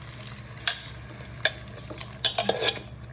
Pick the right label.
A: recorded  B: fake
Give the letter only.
A